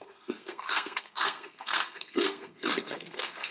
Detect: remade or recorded remade